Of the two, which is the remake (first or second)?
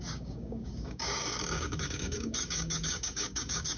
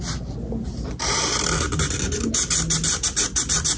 first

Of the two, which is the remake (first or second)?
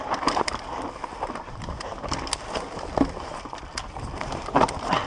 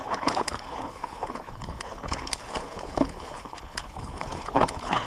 second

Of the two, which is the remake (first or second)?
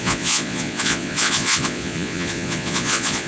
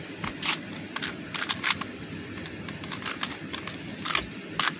first